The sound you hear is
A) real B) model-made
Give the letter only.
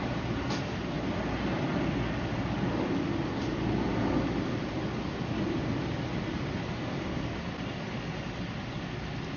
A